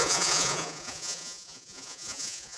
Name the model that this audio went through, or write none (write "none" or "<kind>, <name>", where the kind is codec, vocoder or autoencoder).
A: vocoder, Vocos